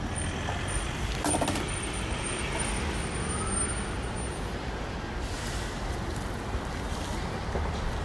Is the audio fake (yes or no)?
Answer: no